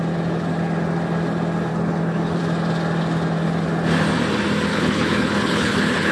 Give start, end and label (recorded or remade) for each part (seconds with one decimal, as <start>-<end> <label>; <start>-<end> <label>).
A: 0.0-1.7 recorded; 1.7-2.4 remade; 2.4-4.7 recorded; 4.7-6.1 remade